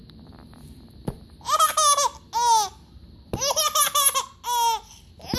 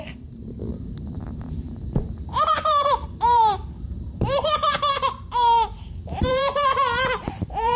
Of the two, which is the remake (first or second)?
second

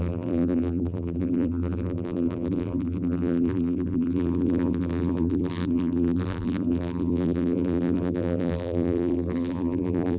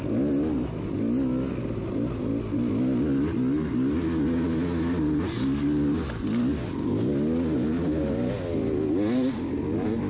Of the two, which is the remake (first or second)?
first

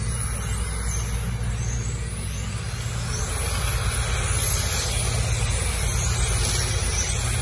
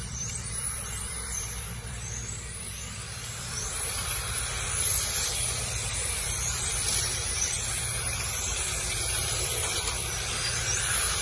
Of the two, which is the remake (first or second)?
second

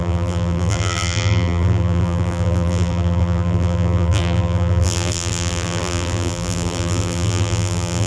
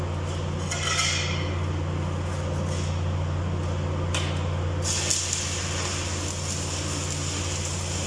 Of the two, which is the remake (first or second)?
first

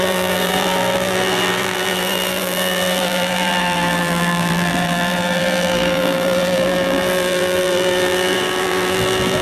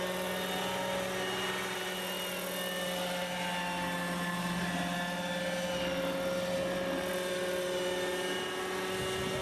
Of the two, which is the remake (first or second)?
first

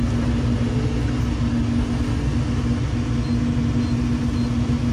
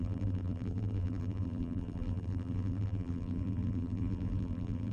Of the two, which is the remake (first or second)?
second